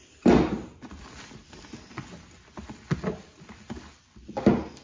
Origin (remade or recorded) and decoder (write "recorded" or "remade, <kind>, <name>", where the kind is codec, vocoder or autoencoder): recorded